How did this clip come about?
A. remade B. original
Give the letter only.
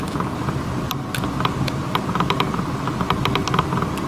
B